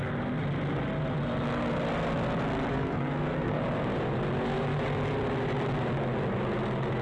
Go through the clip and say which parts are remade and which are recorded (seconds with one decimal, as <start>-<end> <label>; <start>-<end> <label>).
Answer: 0.0-2.7 recorded; 2.7-3.6 remade; 3.6-7.0 recorded